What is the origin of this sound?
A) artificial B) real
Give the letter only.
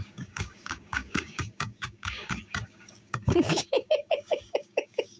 A